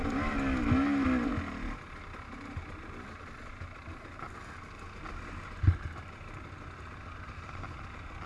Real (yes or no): yes